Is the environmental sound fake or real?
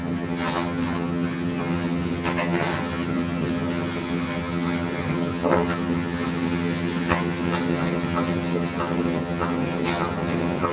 fake